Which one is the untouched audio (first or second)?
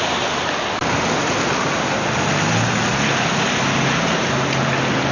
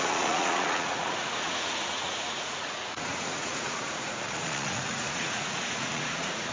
first